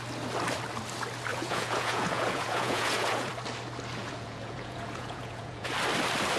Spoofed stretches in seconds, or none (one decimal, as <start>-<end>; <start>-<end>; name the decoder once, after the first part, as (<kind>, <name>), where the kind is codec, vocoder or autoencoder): 1.3-3.3 (vocoder, Vocos); 4.0-5.7